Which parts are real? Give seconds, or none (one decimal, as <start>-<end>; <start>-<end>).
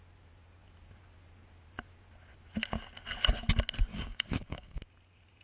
0.0-3.9; 4.8-5.4